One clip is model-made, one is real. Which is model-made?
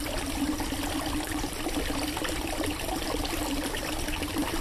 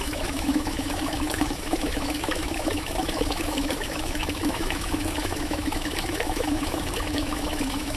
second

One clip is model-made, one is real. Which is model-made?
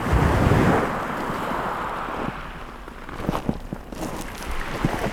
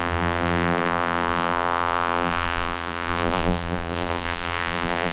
second